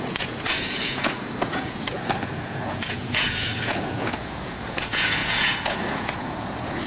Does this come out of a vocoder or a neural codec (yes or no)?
yes